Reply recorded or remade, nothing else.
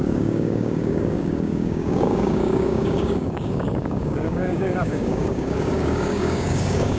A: remade